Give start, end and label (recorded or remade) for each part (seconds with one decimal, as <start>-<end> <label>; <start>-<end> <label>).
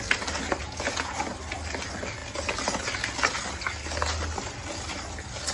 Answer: 0.0-0.6 recorded; 0.6-1.2 remade; 1.2-5.5 recorded